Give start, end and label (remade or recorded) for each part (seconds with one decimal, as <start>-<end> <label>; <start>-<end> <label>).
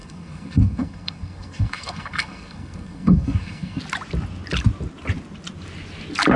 0.0-3.8 remade; 3.8-6.4 recorded